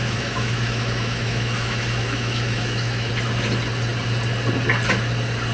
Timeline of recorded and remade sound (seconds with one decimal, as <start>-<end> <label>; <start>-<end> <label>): 0.0-3.1 remade; 3.1-5.5 recorded